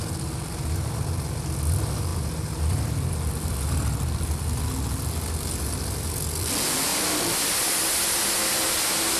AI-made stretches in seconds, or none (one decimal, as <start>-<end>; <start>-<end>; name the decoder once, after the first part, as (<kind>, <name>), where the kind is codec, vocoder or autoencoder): none